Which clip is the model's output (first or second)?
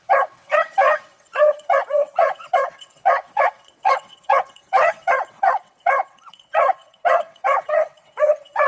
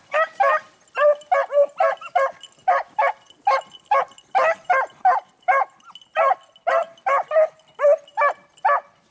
first